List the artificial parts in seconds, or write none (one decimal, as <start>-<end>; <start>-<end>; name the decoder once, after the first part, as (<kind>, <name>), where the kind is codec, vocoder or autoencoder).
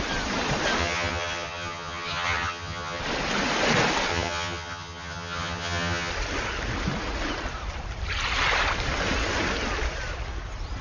0.8-3.0 (vocoder, HiFi-GAN); 4.1-6.1